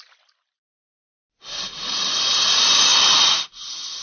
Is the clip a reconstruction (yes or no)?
no